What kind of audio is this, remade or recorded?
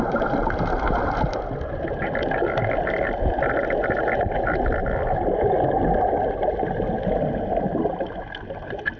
recorded